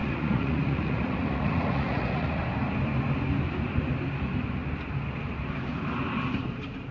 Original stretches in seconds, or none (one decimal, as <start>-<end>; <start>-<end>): 2.4-6.9